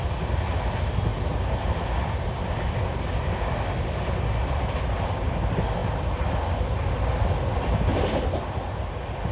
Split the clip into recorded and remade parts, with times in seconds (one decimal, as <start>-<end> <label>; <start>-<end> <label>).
0.0-1.1 recorded; 1.1-1.8 remade; 1.8-9.3 recorded